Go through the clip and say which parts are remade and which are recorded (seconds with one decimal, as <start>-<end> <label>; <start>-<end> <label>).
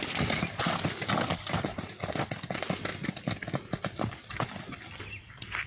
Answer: 0.0-5.7 recorded